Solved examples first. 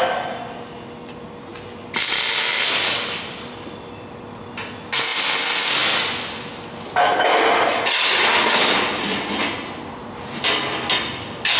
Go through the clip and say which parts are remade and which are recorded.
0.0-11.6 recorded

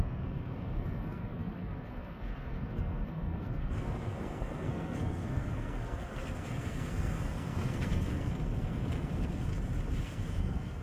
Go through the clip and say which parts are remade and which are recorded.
0.0-9.5 remade; 9.5-10.0 recorded; 10.0-10.8 remade

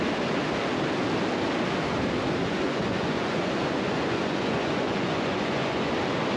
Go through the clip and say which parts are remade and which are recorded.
0.0-2.4 recorded; 2.4-5.9 remade; 5.9-6.4 recorded

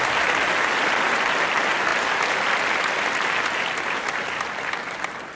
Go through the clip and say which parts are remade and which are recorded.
0.0-5.4 recorded

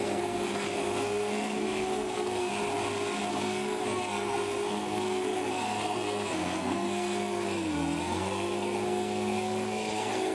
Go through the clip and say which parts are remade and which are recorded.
0.0-2.5 remade; 2.5-3.3 recorded; 3.3-10.3 remade